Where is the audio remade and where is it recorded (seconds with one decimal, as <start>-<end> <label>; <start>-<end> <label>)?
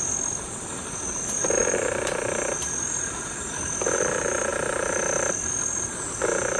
0.0-6.6 recorded